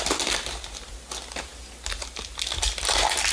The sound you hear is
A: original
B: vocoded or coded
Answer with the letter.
A